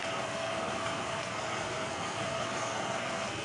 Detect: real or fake fake